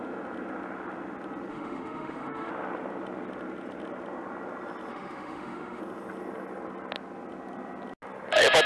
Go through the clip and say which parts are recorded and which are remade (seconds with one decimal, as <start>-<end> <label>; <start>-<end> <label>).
0.0-1.5 recorded; 1.5-2.5 remade; 2.5-4.9 recorded; 4.9-5.8 remade; 5.8-8.7 recorded